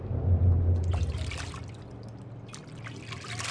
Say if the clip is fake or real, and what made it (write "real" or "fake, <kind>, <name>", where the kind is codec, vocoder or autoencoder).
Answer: real